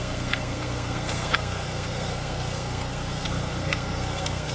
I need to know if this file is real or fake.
fake